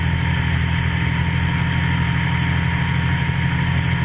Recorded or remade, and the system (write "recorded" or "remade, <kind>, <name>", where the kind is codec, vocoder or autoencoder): recorded